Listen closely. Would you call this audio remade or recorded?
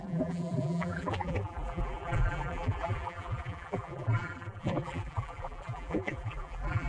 remade